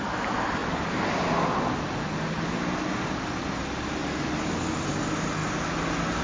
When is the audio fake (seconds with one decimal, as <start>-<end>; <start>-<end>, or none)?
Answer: none

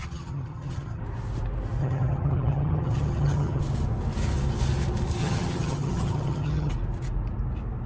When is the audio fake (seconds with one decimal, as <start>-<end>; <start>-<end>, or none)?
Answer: 0.0-1.0; 1.8-3.6; 5.2-6.7

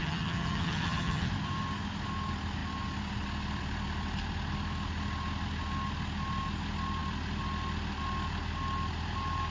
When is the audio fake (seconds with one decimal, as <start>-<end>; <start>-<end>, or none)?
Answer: 0.0-1.3

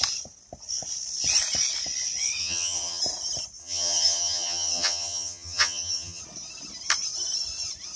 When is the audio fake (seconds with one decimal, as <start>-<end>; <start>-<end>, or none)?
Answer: 2.4-3.0; 3.6-6.2

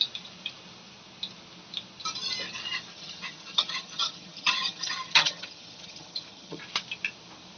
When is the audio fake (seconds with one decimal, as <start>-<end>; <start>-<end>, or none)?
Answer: 2.9-6.6

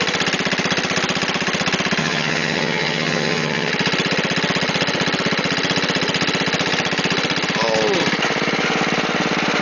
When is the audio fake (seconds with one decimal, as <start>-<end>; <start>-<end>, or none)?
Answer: 2.0-3.7

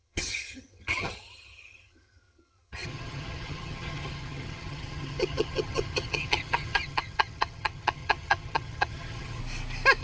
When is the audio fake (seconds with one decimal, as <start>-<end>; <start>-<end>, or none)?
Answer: 0.0-9.4